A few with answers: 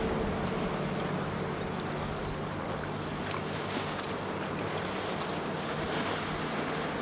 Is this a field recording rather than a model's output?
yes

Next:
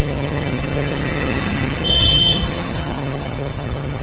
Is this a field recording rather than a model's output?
no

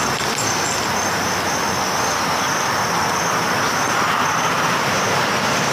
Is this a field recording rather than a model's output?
yes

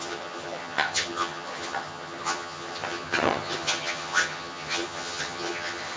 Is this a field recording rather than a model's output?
no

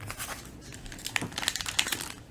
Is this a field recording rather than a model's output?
yes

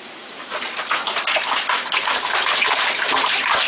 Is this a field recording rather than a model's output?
no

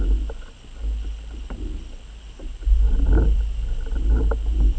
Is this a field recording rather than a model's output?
yes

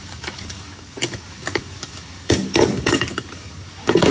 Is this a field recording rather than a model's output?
no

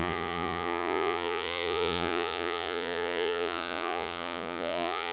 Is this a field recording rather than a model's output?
no